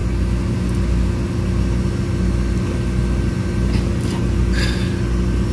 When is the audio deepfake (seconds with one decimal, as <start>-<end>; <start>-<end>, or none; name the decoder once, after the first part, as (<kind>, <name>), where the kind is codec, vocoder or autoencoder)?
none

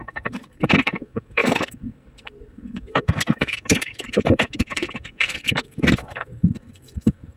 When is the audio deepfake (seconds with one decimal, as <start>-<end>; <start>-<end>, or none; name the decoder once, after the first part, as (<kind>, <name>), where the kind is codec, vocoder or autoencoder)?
0.0-7.4 (codec, SNAC)

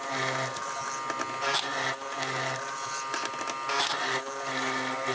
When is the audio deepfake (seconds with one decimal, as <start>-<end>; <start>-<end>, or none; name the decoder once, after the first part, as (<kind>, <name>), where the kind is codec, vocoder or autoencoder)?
none